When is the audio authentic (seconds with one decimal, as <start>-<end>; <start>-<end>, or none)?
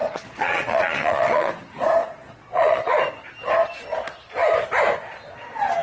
1.5-2.0; 3.0-5.8